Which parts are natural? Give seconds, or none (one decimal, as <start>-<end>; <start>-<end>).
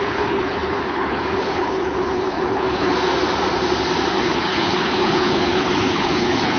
2.9-4.1